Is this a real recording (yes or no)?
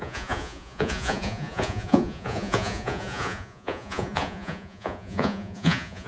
no